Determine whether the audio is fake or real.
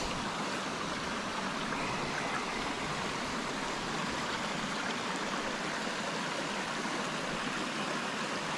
real